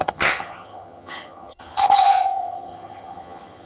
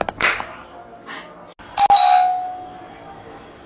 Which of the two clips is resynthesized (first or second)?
first